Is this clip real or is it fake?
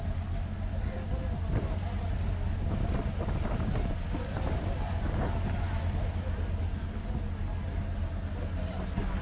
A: real